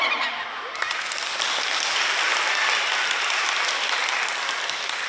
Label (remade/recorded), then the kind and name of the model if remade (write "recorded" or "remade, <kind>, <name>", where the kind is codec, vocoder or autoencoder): recorded